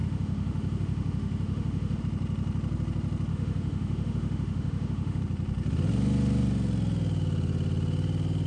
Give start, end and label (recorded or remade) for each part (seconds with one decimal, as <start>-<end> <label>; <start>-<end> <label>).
0.0-2.0 remade; 2.0-3.3 recorded; 3.3-5.2 remade; 5.2-8.5 recorded